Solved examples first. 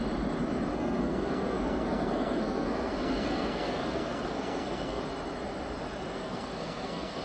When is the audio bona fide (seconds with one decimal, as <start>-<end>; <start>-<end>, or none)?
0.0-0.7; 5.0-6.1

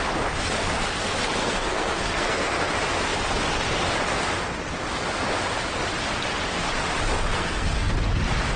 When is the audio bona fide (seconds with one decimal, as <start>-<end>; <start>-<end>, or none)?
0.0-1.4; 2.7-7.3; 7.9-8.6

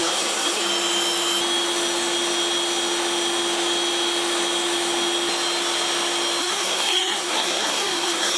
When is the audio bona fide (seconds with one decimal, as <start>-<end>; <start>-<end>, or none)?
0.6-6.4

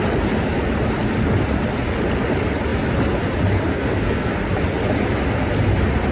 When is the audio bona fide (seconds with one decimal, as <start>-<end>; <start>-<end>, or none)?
0.0-3.7; 4.3-6.1